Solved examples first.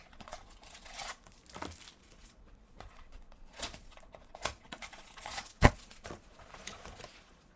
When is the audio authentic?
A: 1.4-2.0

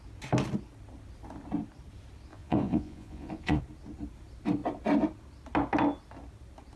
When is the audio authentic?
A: 0.0-2.3; 3.6-6.8